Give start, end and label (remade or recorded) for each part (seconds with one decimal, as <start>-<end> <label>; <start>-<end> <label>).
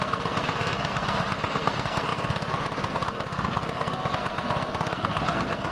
0.0-5.7 remade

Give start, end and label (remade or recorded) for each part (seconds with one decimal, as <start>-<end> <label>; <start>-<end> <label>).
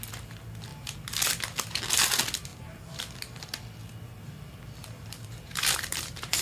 0.0-4.8 recorded; 4.8-6.4 remade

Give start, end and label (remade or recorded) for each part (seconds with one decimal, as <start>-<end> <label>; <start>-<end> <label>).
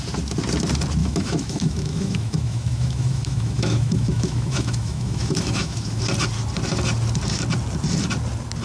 0.0-1.0 recorded; 1.0-6.0 remade; 6.0-8.6 recorded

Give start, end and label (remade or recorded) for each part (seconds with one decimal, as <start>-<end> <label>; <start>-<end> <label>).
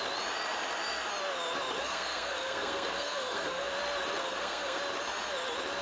0.0-1.8 recorded; 1.8-3.7 remade; 3.7-4.2 recorded; 4.2-4.8 remade; 4.8-5.8 recorded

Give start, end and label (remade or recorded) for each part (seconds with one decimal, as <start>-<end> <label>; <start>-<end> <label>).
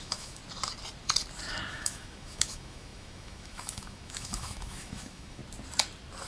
0.0-0.4 remade; 0.4-1.7 recorded; 1.7-5.4 remade; 5.4-6.3 recorded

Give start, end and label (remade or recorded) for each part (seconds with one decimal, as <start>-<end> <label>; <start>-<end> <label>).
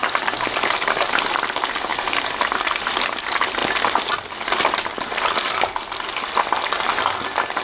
0.0-7.6 recorded